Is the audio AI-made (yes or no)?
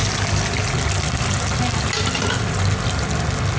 no